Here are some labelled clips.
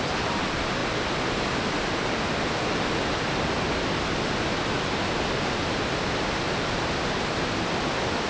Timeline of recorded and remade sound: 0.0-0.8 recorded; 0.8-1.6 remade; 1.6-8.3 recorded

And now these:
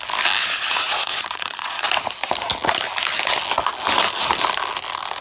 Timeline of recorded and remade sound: 0.0-0.4 recorded; 0.4-1.8 remade; 1.8-5.2 recorded